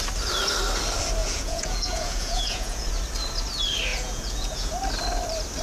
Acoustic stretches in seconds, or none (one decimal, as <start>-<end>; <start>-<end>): 0.0-1.2; 2.9-3.9; 4.7-5.6